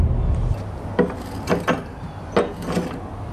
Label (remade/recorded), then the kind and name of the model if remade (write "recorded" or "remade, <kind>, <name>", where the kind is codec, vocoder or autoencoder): recorded